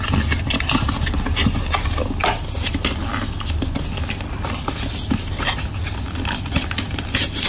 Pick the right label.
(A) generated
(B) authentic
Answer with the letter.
B